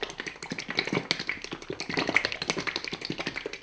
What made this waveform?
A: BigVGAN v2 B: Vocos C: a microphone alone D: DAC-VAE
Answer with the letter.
C